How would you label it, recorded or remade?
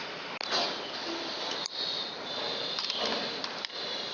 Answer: recorded